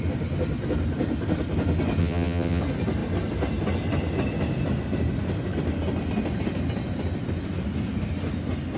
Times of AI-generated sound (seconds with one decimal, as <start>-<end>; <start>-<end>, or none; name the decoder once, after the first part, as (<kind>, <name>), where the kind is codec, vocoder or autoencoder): 2.0-2.6 (vocoder, WaveNeXt)